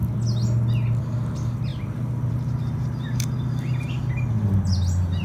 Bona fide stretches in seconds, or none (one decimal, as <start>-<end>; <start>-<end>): 0.0-5.2

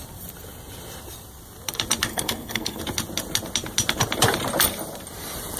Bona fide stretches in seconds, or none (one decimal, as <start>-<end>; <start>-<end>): 0.0-2.1; 2.8-5.6

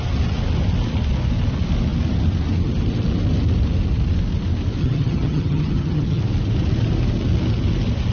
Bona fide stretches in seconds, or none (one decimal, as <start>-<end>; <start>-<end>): 0.0-4.8; 6.2-8.1

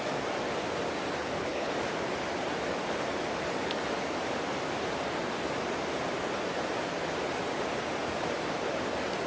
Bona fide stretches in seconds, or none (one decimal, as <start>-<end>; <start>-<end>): 0.0-1.2; 1.7-9.3

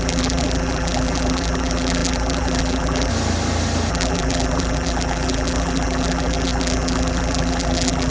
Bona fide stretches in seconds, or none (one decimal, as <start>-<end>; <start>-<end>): 3.1-3.9

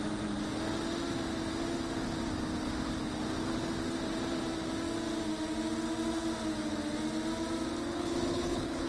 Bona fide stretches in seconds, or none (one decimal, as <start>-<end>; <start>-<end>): 0.0-7.9

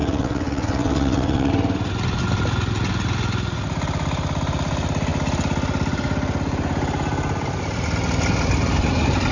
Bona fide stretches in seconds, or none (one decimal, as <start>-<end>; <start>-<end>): 1.5-9.3